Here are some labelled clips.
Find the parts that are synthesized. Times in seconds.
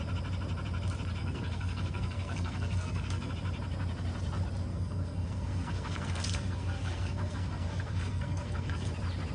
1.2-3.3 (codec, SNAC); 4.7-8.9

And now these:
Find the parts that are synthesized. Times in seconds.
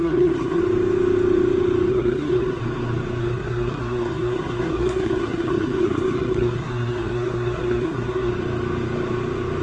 0.0-0.6 (codec, SNAC); 1.9-2.6; 3.2-8.3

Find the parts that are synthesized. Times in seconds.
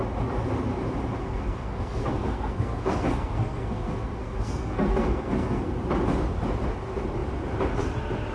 1.2-5.8 (codec, SNAC)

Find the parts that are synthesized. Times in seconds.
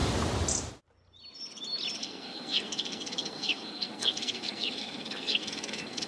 2.0-6.1 (codec, SNAC)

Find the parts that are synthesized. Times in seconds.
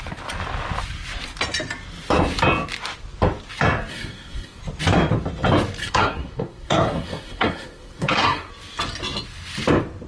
3.9-4.6 (codec, SNAC); 5.8-8.5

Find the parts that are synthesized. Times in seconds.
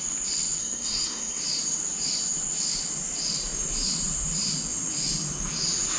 0.6-1.4 (codec, SNAC)